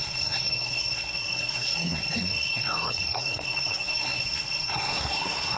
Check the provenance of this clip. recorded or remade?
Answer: remade